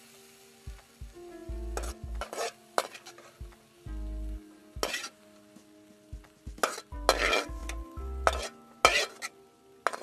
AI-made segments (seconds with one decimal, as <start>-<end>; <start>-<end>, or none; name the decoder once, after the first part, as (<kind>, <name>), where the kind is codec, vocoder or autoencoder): none